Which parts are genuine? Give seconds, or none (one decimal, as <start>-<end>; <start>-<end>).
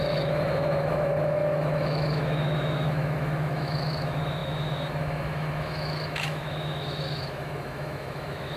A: none